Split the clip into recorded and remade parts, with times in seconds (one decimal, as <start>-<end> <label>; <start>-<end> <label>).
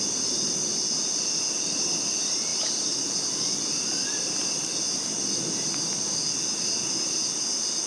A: 0.0-7.9 recorded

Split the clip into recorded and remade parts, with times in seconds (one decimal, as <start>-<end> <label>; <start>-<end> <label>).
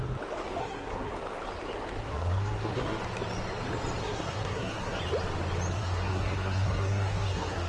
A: 0.0-0.6 recorded; 0.6-1.1 remade; 1.1-2.0 recorded; 2.0-3.0 remade; 3.0-4.0 recorded; 4.0-5.0 remade; 5.0-5.7 recorded; 5.7-7.7 remade